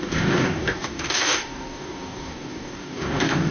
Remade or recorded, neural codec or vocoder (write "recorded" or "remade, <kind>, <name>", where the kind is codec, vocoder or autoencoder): remade, codec, DAC